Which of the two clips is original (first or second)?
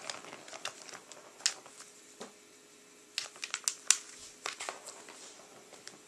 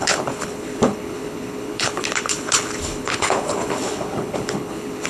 first